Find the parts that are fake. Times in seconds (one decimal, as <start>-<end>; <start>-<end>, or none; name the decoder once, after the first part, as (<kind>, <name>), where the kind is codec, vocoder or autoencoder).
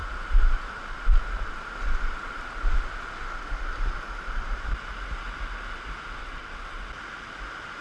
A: 6.2-6.9 (vocoder, WaveNeXt)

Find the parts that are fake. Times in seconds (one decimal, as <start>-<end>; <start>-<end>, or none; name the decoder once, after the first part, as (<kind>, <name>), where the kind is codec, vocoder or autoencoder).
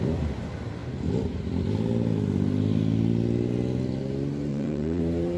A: 4.5-5.0 (vocoder, WaveNeXt)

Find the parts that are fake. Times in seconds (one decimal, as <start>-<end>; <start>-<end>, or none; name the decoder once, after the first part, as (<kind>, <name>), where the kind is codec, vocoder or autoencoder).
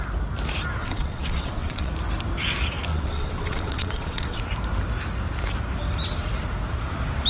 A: 0.8-1.9 (vocoder, WaveNeXt); 2.9-4.4